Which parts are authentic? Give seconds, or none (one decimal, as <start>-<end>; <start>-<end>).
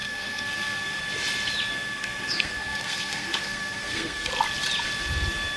1.0-1.7; 4.3-5.6